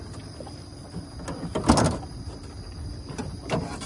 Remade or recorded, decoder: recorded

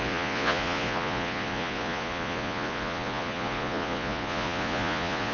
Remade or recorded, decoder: remade, vocoder, Vocos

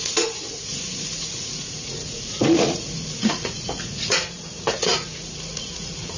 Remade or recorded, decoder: remade, vocoder, Vocos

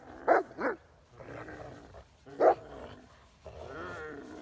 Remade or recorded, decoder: recorded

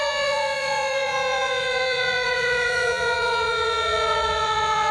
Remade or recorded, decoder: remade, vocoder, Vocos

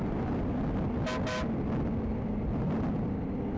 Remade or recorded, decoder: recorded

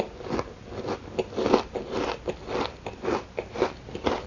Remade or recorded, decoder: recorded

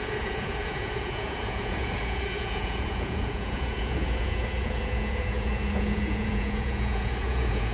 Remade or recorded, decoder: remade, vocoder, Vocos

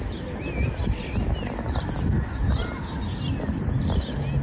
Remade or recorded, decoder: recorded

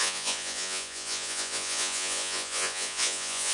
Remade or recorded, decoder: remade, vocoder, Vocos